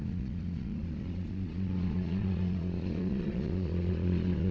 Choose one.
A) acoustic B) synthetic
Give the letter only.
B